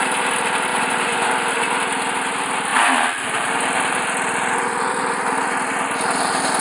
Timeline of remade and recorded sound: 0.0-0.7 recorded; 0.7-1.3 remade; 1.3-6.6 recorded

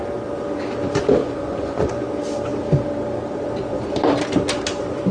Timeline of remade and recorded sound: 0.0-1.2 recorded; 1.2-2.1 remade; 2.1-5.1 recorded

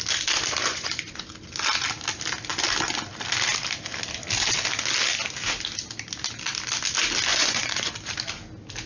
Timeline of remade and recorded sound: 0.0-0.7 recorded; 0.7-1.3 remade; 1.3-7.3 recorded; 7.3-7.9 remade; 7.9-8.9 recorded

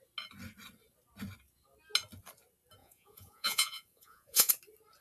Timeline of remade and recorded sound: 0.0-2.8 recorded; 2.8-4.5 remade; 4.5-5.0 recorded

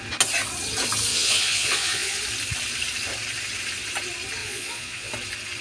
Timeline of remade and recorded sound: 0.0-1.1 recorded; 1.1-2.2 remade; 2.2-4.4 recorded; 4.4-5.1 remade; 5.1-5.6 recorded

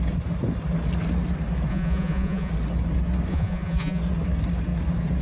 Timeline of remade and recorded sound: 0.0-1.7 recorded; 1.7-2.5 remade; 2.5-3.3 recorded; 3.3-4.0 remade; 4.0-5.2 recorded

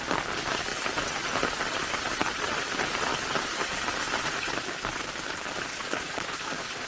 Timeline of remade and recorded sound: 0.0-5.7 recorded; 5.7-6.9 remade